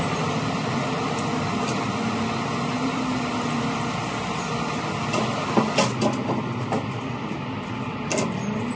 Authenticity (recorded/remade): recorded